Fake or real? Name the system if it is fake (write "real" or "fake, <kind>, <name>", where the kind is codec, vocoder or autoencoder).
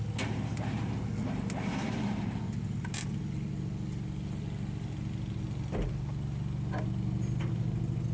real